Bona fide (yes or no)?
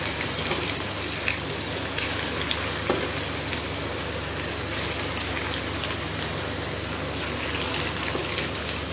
yes